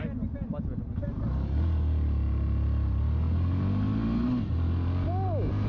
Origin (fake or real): real